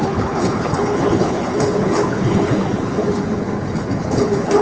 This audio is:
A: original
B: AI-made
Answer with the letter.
B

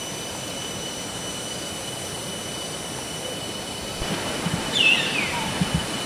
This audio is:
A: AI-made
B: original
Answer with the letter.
B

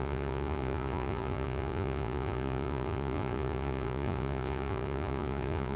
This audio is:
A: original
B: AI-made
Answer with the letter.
B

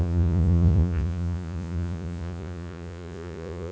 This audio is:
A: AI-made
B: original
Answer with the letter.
A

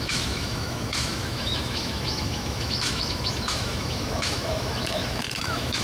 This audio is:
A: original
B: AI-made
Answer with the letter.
B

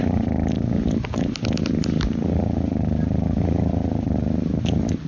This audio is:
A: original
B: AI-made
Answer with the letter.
A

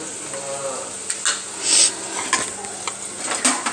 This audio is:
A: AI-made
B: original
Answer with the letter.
B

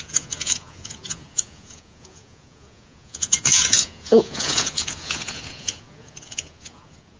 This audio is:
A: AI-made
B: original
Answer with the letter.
A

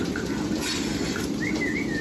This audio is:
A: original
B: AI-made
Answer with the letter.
A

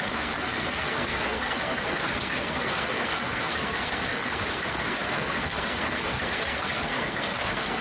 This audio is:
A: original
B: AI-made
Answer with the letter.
B